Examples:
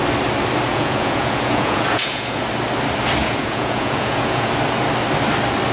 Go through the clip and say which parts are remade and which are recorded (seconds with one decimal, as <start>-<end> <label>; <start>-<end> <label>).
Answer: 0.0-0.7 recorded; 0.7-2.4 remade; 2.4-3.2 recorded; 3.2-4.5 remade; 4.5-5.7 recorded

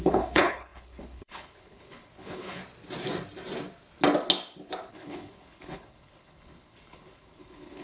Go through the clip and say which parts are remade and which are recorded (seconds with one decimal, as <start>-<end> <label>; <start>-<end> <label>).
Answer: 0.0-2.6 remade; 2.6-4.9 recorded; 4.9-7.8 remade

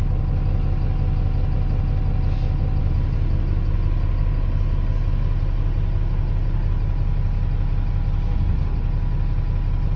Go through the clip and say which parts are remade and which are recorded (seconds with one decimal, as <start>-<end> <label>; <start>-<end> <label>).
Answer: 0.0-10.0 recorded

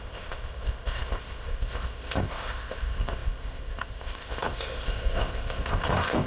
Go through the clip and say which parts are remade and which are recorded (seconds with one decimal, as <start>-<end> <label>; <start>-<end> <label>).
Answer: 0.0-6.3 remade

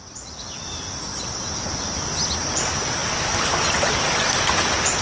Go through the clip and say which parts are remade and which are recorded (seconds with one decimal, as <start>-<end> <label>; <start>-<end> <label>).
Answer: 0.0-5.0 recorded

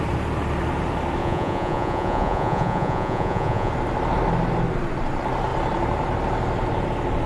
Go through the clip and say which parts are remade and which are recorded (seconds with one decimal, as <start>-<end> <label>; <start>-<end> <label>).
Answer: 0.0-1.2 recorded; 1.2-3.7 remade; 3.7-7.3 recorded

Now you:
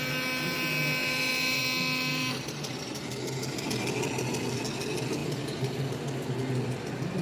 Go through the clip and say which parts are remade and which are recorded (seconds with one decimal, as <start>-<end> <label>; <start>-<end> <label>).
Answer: 0.0-1.0 recorded; 1.0-1.6 remade; 1.6-2.1 recorded; 2.1-3.6 remade; 3.6-5.2 recorded; 5.2-5.8 remade; 5.8-7.2 recorded